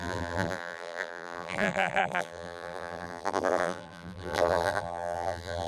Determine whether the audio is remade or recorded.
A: remade